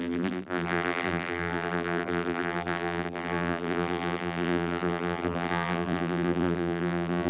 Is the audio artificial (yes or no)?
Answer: yes